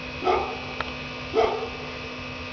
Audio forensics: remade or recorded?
recorded